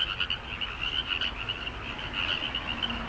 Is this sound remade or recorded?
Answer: recorded